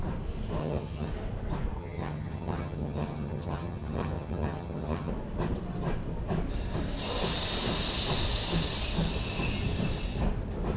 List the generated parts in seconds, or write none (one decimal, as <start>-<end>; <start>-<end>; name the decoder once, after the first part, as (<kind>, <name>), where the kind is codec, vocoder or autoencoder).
0.6-1.1 (vocoder, HiFi-GAN); 1.8-5.1